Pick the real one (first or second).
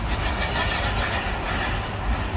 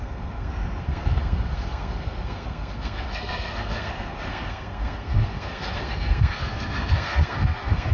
first